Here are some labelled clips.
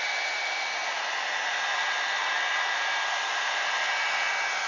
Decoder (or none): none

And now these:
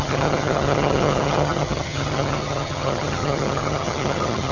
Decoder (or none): vocoder, HiFi-GAN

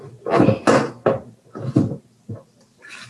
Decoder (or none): none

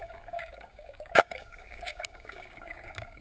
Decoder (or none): codec, DAC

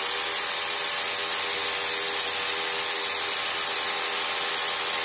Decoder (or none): none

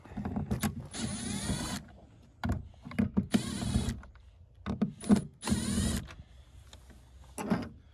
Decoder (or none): none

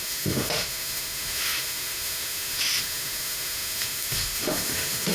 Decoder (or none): autoencoder, DAC-VAE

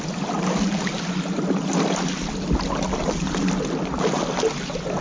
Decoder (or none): none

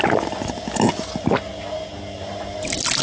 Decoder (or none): none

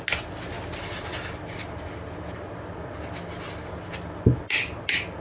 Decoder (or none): none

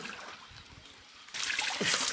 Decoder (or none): none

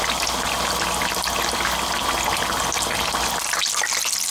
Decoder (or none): none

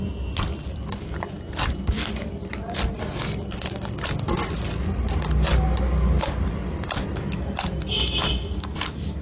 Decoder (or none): none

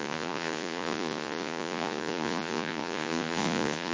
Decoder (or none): vocoder, Vocos